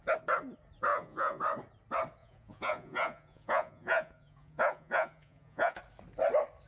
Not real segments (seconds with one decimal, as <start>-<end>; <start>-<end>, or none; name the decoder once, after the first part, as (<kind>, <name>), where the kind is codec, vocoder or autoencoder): 0.9-1.4 (vocoder, Vocos); 2.2-5.8